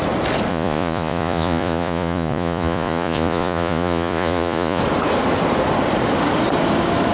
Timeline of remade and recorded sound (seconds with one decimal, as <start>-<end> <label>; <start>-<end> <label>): 0.0-0.5 recorded; 0.5-4.8 remade; 4.8-7.1 recorded